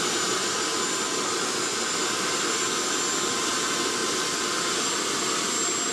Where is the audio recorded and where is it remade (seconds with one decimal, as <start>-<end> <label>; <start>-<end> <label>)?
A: 0.0-5.9 recorded